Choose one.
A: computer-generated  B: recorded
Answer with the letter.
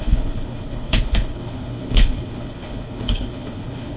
A